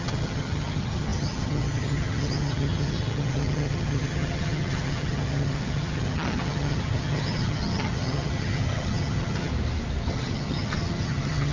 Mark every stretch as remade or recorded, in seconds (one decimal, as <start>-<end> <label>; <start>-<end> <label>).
0.0-9.5 remade; 9.5-10.1 recorded; 10.1-11.5 remade